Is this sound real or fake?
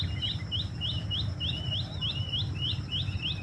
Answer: real